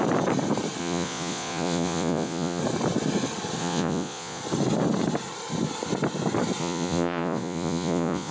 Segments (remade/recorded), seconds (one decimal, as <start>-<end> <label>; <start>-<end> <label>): 0.0-0.8 recorded; 0.8-2.6 remade; 2.6-3.6 recorded; 3.6-4.4 remade; 4.4-6.6 recorded; 6.6-8.3 remade